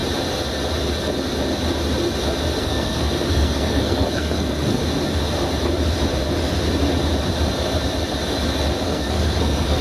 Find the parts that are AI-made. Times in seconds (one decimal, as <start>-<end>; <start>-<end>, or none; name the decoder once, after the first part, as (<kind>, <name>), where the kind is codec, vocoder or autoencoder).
2.6-4.8 (codec, SNAC); 8.8-9.8